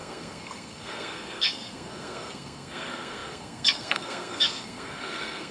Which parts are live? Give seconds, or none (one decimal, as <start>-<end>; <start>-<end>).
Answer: none